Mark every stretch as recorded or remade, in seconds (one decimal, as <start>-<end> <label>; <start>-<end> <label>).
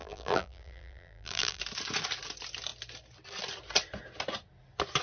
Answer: 0.0-1.6 remade; 1.6-5.0 recorded